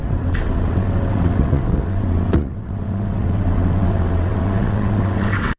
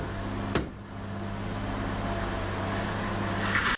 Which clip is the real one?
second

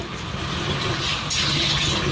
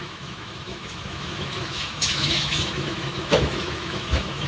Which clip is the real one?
first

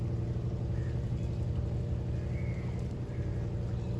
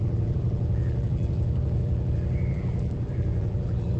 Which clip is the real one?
first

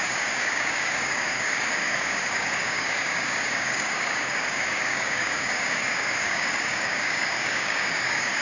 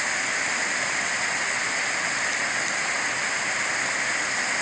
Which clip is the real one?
second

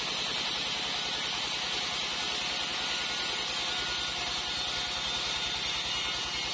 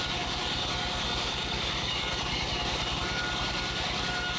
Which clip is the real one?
first